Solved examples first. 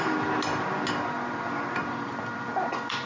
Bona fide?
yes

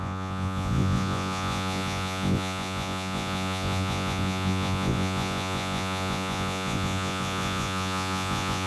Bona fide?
no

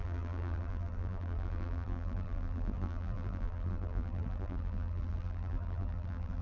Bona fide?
no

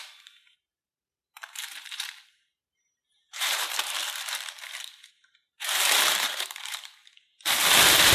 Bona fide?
no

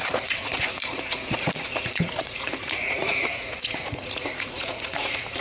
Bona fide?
no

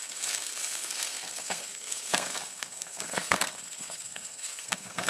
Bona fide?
no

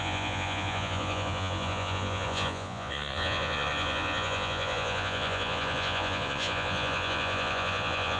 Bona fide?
no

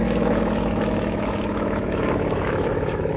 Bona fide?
no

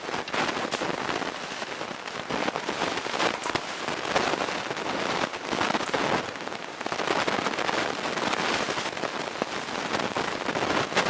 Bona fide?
yes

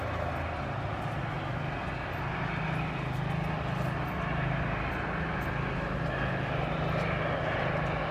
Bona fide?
yes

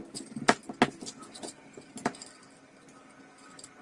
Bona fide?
yes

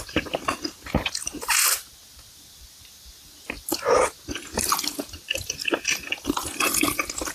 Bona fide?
yes